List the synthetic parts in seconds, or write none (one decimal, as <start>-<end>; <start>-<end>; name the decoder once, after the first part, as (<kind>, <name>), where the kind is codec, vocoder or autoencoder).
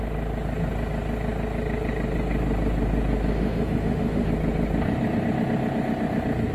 3.3-4.3 (autoencoder, DAC-VAE)